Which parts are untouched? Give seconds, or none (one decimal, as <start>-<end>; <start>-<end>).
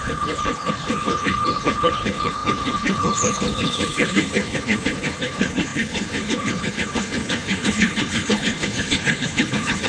none